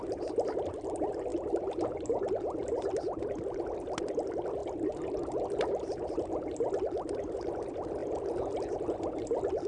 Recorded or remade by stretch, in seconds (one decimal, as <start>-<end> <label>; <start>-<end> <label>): 0.0-9.7 recorded